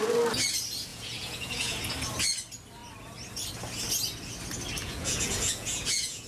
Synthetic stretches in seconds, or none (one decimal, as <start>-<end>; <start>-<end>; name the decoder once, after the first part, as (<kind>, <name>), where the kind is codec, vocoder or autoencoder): 0.9-1.8 (vocoder, Vocos); 4.8-6.3